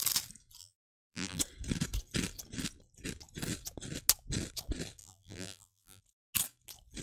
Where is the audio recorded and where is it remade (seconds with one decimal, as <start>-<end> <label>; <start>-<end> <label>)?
0.0-0.6 recorded; 0.6-1.4 remade; 1.4-5.0 recorded; 5.0-6.0 remade; 6.0-7.0 recorded